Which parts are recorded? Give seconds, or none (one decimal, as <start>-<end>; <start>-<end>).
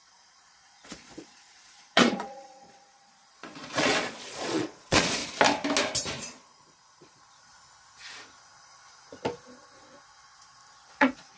5.2-6.2; 7.5-11.0